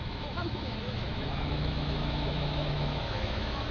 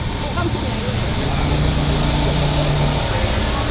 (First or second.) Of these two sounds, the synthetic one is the first